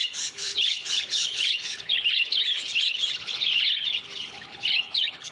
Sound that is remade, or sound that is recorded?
remade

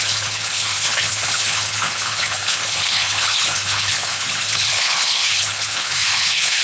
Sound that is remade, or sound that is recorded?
remade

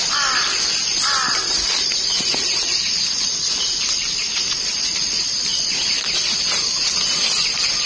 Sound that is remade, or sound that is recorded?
recorded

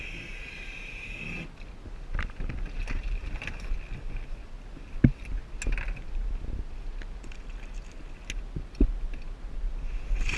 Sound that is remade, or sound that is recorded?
recorded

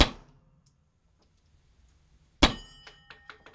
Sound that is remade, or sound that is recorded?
recorded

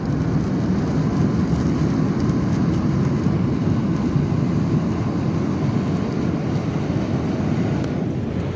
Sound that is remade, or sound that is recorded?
recorded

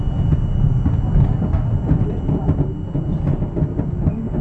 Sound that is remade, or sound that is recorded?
recorded